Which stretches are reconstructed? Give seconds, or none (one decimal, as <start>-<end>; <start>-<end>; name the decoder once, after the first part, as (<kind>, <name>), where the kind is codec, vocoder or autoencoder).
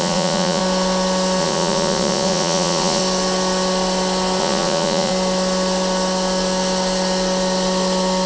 0.0-0.6 (vocoder, Vocos); 1.4-3.0; 4.4-5.1